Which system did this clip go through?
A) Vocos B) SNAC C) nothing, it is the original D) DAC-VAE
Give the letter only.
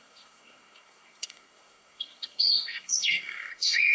B